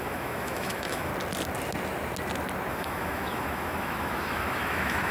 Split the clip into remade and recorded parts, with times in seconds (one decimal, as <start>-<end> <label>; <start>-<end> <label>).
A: 0.0-1.1 remade; 1.1-2.7 recorded; 2.7-5.1 remade